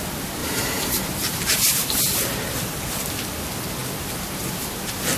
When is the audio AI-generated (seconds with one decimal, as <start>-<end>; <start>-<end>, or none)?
0.4-3.1